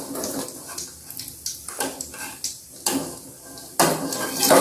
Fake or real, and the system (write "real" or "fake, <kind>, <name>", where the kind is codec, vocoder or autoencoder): real